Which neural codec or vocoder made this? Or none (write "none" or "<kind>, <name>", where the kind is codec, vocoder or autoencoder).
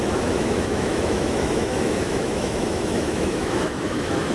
autoencoder, DAC-VAE